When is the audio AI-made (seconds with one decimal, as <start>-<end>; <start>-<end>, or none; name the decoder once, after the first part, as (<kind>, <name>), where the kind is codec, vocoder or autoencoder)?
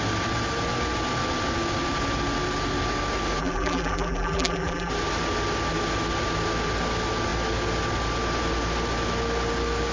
3.4-4.9 (vocoder, BigVGAN v2)